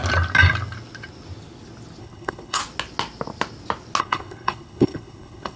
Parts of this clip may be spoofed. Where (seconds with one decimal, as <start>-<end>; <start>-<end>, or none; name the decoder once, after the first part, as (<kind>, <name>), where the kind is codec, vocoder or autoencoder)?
2.0-2.6 (codec, HILCodec); 4.0-5.6